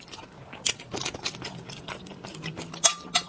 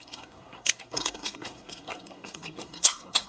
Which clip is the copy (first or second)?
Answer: second